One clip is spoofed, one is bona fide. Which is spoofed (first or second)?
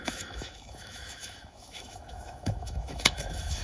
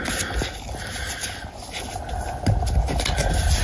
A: first